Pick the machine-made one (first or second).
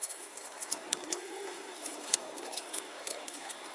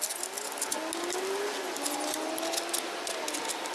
first